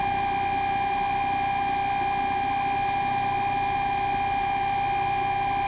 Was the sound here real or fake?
real